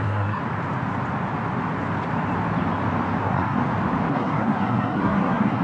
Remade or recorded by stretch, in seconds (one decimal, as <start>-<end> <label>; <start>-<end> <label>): 0.0-0.4 remade; 0.4-3.2 recorded; 3.2-3.6 remade; 3.6-4.1 recorded; 4.1-5.6 remade